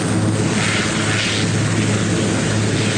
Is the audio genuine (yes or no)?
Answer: yes